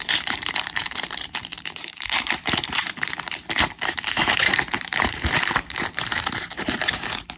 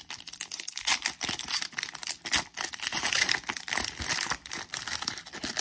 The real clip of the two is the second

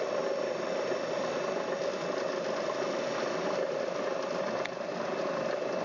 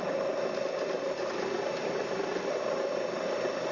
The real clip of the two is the second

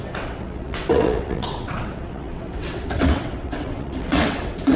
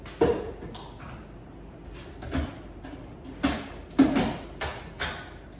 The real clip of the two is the second